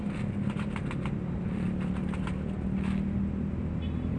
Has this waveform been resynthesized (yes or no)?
no